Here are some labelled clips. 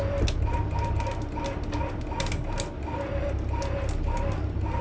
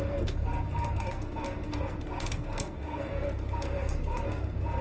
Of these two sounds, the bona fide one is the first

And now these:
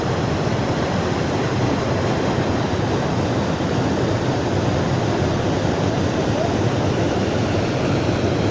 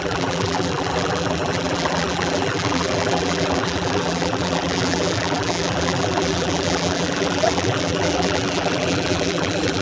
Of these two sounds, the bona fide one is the first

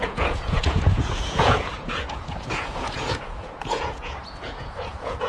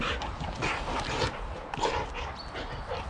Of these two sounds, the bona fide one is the second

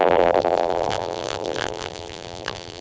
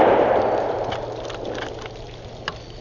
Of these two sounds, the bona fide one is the second